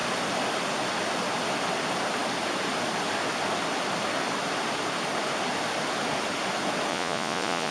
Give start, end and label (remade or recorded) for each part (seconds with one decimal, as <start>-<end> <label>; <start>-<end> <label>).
0.0-6.9 recorded; 6.9-7.7 remade